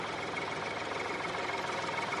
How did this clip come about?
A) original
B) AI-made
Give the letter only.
A